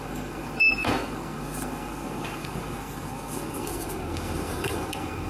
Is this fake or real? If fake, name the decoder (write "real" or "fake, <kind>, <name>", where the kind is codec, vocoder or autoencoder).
fake, codec, SNAC